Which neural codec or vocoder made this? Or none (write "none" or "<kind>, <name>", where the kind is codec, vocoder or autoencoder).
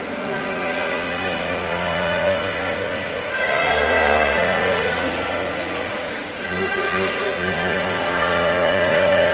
vocoder, Vocos